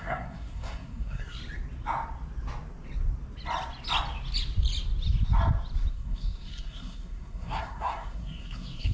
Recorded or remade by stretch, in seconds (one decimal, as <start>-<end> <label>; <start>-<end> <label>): 0.0-1.4 remade; 1.4-5.9 recorded; 5.9-8.9 remade